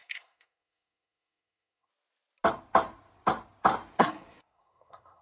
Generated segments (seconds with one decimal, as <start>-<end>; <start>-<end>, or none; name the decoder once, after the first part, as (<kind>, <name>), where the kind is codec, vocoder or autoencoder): 0.0-1.9 (codec, SNAC); 4.0-5.2